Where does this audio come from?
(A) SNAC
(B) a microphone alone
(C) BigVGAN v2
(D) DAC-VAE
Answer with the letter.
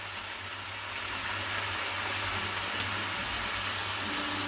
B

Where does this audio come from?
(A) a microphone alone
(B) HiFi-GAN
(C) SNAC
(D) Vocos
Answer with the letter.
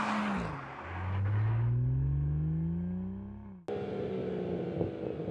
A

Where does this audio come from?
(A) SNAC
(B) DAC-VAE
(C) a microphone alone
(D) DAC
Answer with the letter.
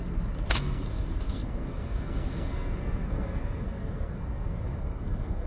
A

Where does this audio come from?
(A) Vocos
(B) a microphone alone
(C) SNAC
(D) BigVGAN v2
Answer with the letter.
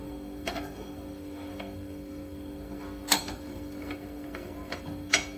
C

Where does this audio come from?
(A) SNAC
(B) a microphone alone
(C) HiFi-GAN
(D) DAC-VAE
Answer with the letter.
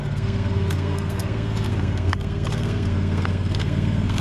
A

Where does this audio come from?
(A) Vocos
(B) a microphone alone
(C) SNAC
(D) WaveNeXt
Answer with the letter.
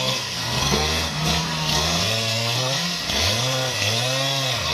C